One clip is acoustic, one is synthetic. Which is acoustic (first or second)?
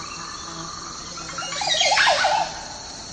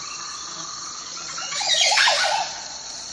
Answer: first